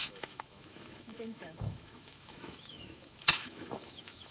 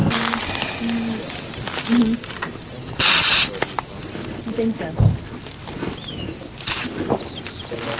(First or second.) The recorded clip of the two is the second